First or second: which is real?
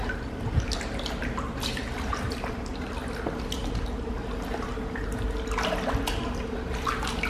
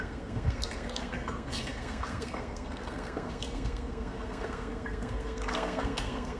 first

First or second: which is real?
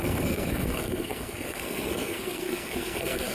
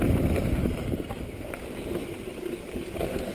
second